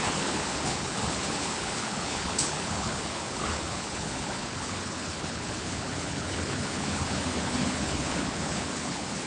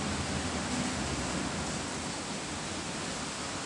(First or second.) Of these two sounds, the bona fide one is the second